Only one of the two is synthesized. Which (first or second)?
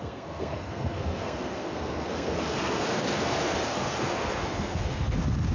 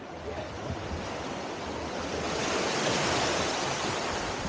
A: first